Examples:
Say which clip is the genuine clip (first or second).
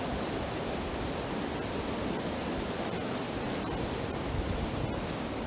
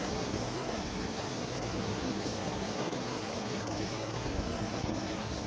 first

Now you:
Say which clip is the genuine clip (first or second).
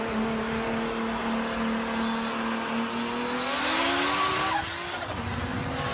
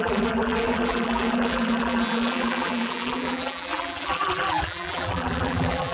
first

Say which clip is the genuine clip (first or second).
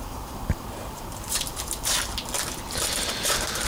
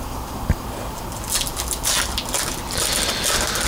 second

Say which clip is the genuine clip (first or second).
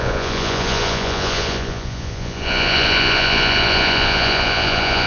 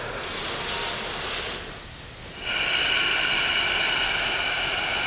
second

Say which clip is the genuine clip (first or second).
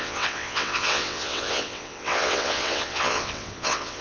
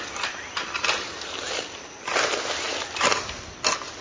second